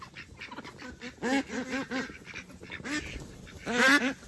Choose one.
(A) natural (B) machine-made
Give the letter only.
A